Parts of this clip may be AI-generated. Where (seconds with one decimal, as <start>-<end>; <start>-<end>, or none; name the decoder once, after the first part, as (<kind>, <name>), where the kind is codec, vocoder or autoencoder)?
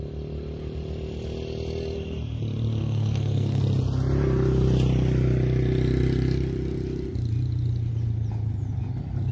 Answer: 2.8-3.6 (codec, SNAC)